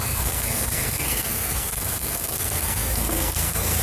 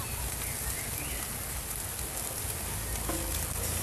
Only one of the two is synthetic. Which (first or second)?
first